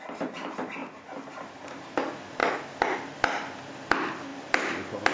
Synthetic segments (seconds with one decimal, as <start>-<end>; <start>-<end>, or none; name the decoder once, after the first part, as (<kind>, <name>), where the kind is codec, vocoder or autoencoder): none